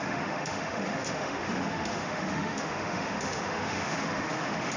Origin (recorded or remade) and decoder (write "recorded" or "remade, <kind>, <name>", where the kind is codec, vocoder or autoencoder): remade, autoencoder, DAC-VAE